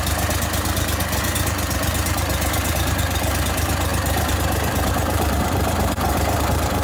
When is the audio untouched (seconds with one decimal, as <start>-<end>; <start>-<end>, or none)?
none